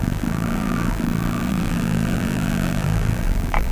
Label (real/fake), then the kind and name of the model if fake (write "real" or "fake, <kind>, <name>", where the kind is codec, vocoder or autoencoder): fake, vocoder, BigVGAN v2